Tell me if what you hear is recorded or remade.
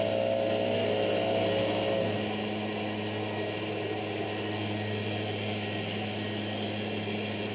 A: recorded